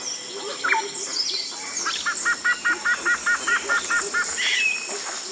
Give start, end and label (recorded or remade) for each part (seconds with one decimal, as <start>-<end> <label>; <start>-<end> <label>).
0.0-5.3 recorded